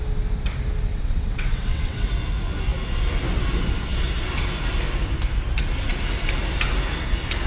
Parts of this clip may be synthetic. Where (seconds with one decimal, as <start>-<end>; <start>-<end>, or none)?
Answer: 0.9-2.1